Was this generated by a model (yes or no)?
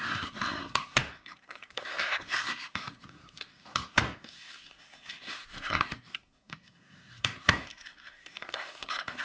yes